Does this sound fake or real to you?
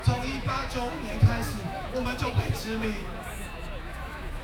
fake